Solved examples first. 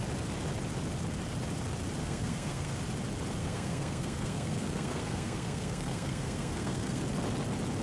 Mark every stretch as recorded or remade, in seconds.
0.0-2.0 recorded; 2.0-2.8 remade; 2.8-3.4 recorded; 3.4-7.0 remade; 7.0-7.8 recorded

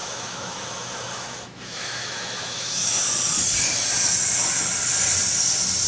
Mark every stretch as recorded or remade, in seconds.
0.0-3.0 remade; 3.0-5.9 recorded

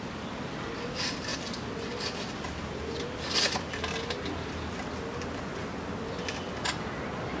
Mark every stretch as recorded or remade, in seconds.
0.0-7.4 recorded

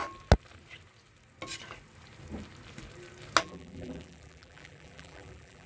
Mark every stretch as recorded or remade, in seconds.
0.0-3.4 recorded; 3.4-5.7 remade

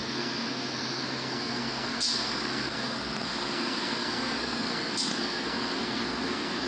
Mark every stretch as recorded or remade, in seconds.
0.0-6.7 remade

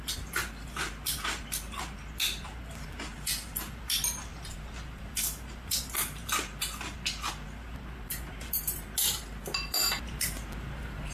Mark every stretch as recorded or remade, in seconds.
0.0-4.3 recorded; 4.3-5.8 remade; 5.8-11.1 recorded

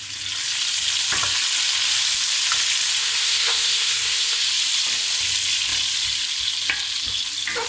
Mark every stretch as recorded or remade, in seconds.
0.0-3.0 recorded; 3.0-4.4 remade; 4.4-7.7 recorded

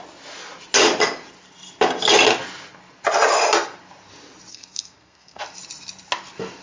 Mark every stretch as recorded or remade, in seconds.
0.0-4.5 recorded; 4.5-5.4 remade; 5.4-6.6 recorded